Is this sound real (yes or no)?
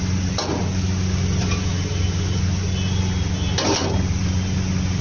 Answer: yes